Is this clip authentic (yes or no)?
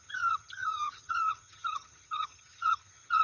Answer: no